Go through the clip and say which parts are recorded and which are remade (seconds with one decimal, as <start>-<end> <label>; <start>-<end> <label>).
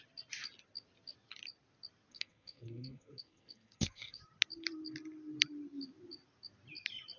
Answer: 0.0-2.1 recorded; 2.1-4.2 remade; 4.2-7.2 recorded